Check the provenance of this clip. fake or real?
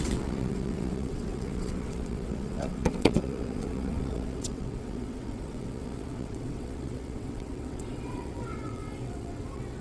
fake